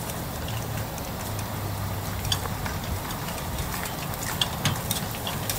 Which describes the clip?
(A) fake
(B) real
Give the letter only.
B